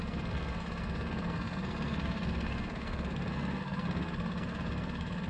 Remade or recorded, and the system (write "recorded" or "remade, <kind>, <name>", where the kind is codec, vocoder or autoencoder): remade, codec, SNAC